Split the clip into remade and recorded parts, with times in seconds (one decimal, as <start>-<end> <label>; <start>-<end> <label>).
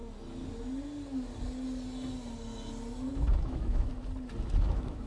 0.0-3.1 recorded; 3.1-3.9 remade; 3.9-4.6 recorded; 4.6-5.1 remade